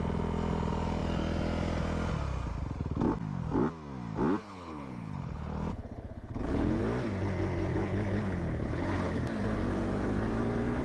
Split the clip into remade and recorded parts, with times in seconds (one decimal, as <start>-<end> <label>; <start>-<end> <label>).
0.0-4.4 recorded; 4.4-6.8 remade; 6.8-7.7 recorded; 7.7-9.2 remade; 9.2-10.8 recorded